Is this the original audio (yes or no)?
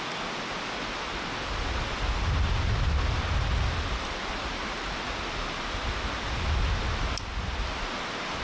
yes